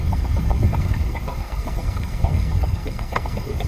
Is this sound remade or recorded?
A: remade